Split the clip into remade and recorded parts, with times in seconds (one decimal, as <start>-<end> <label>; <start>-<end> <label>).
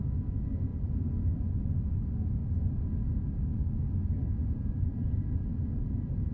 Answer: 0.0-4.4 recorded; 4.4-6.3 remade